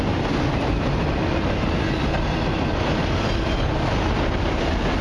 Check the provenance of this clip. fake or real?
real